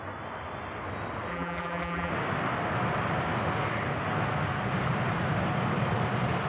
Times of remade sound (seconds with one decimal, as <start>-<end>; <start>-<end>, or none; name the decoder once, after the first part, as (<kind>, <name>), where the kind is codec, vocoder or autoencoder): 1.3-2.1 (vocoder, BigVGAN v2)